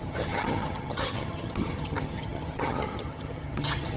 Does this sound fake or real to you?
fake